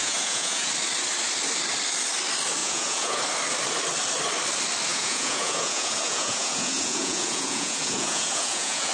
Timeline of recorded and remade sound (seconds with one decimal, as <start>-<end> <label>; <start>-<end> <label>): 0.0-0.7 remade; 0.7-2.6 recorded; 2.6-3.2 remade; 3.2-4.9 recorded; 4.9-8.9 remade